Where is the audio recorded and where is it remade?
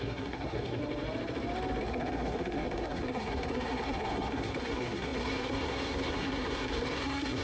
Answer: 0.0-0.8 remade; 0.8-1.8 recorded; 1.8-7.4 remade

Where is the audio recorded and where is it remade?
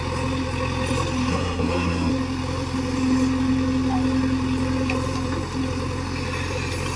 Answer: 0.0-1.3 recorded; 1.3-2.1 remade; 2.1-7.0 recorded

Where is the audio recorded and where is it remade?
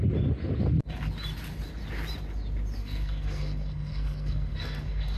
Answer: 0.0-2.8 recorded; 2.8-5.2 remade